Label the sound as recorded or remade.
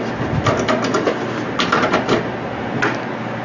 recorded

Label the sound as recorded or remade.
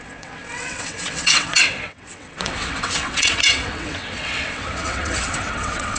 remade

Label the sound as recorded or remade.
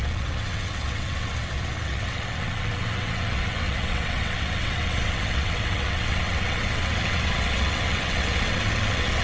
remade